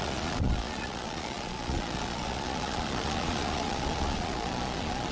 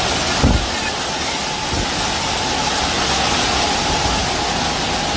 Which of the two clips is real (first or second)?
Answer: second